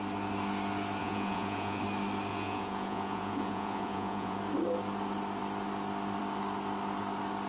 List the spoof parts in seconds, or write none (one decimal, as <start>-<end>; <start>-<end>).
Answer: 1.0-1.8; 2.3-4.4